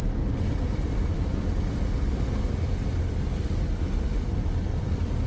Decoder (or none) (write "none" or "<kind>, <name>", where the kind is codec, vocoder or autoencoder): none